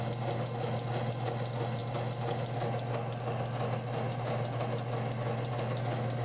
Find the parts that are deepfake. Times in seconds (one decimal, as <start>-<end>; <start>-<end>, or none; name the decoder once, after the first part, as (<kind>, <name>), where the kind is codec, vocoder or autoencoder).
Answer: none